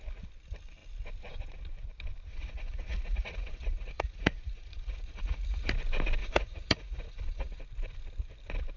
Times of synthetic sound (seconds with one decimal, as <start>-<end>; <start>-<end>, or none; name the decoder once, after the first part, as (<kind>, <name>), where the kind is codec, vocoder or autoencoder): 2.3-5.7 (vocoder, Vocos); 6.2-7.6